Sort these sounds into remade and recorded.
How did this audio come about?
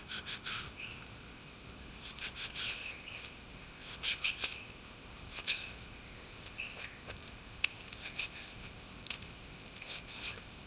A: remade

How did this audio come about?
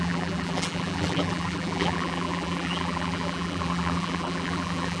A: remade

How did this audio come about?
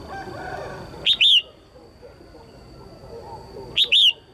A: recorded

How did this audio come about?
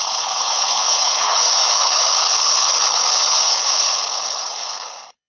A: remade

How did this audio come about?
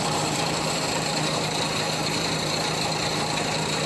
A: remade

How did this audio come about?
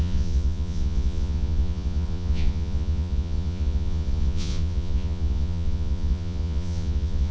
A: remade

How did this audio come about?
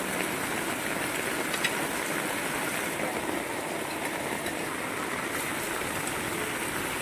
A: recorded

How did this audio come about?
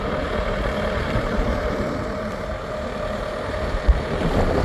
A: remade